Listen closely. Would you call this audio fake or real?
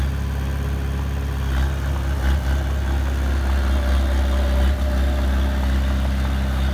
real